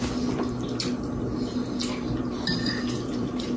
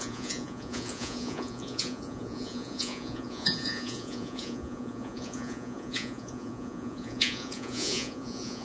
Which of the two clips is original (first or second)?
first